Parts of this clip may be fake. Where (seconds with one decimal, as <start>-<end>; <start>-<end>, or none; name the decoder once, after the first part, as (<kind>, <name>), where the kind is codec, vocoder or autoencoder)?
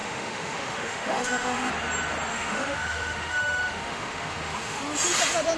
0.0-1.7 (autoencoder, DAC-VAE); 2.3-4.8